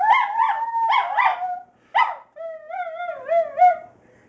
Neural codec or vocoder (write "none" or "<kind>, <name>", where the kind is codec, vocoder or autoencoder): none